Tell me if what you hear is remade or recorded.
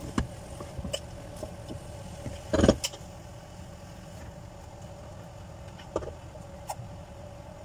recorded